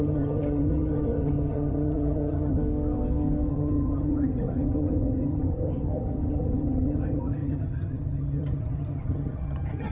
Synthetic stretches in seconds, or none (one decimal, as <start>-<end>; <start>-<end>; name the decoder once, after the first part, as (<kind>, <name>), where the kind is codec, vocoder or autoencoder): 0.0-2.6 (vocoder, HiFi-GAN); 3.5-9.9